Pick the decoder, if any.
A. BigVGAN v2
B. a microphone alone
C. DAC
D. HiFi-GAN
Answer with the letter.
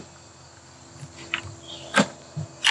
B